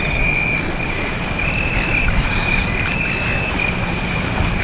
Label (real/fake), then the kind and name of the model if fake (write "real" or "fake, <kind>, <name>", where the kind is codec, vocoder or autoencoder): real